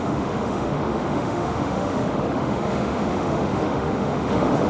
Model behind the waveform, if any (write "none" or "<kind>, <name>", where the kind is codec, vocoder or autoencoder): autoencoder, DAC-VAE